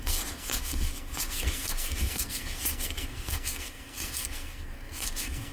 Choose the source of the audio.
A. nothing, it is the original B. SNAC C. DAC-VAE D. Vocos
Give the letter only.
B